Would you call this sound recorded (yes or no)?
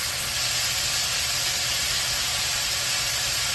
yes